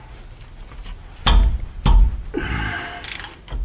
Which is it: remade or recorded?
recorded